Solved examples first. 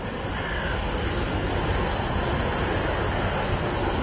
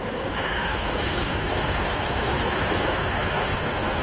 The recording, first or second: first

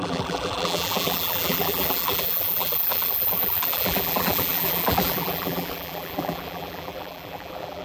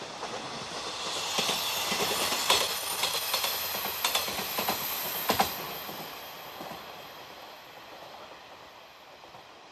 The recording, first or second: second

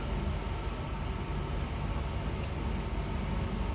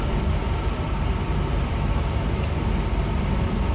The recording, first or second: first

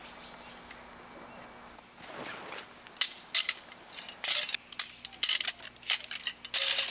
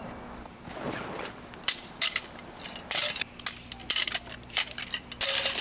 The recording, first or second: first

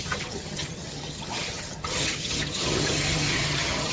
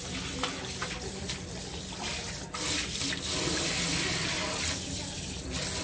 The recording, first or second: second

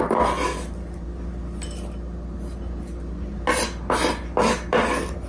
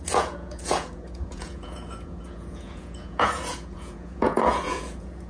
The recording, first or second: first